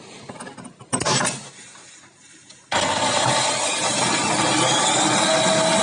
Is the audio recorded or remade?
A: recorded